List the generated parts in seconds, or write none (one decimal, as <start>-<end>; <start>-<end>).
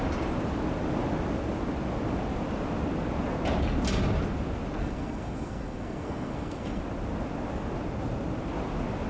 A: 4.8-6.8